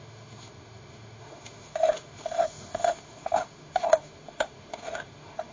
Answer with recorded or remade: remade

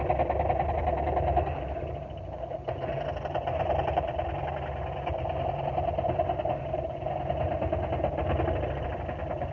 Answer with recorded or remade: recorded